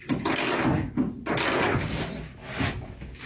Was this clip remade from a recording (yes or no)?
no